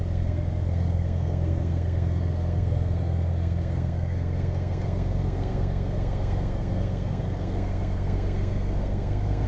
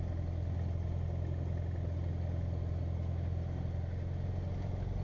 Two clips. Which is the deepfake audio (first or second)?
first